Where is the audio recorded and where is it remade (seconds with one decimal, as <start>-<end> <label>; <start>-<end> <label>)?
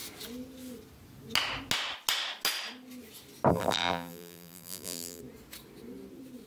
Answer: 0.0-3.5 recorded; 3.5-5.2 remade; 5.2-6.5 recorded